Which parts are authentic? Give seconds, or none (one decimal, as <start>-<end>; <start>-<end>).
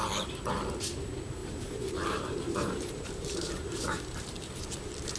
0.0-1.4; 4.5-5.2